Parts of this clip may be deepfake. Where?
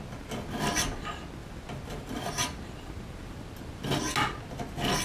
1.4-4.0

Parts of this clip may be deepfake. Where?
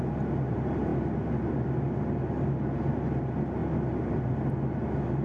none